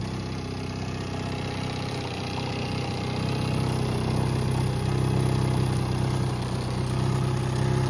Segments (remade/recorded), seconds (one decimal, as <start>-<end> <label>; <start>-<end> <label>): 0.0-7.9 recorded